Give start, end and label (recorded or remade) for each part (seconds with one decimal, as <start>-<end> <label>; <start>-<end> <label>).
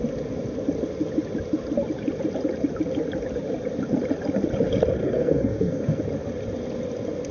0.0-5.0 recorded; 5.0-6.0 remade; 6.0-7.3 recorded